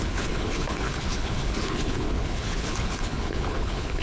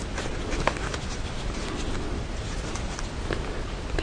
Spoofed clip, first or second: first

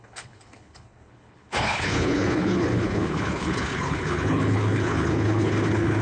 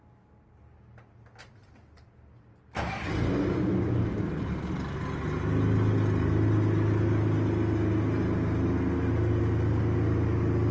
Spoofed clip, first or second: first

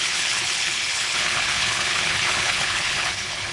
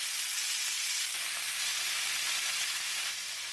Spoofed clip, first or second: first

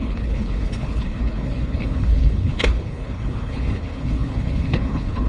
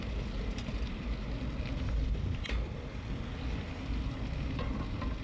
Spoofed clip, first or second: first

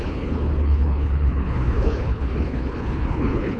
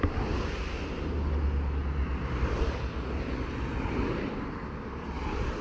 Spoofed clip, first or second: first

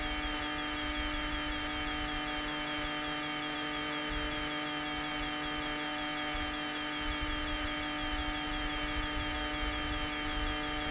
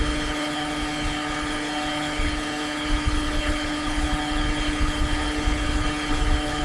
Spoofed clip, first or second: second